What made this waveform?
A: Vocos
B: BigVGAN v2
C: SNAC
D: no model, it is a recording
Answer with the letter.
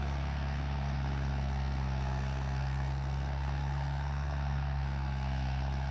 C